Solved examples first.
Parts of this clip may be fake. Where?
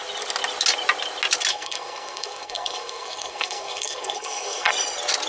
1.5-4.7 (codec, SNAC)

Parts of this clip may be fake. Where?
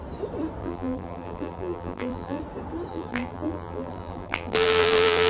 0.6-2.4 (vocoder, BigVGAN v2); 2.9-5.3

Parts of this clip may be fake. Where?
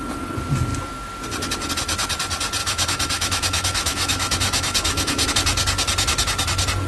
2.6-5.3 (autoencoder, DAC-VAE)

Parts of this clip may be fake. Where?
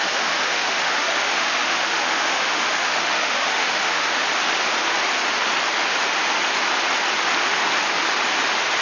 0.0-4.3 (autoencoder, DAC-VAE)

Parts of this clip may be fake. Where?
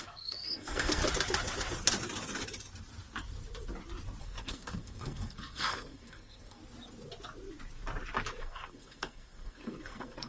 0.0-1.0 (codec, SNAC); 4.2-6.6; 8.4-10.3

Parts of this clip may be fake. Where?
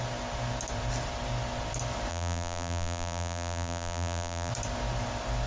2.1-4.5 (vocoder, BigVGAN v2)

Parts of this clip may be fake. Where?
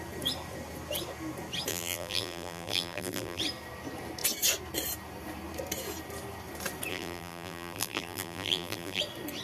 1.7-3.4 (vocoder, BigVGAN v2); 6.9-9.0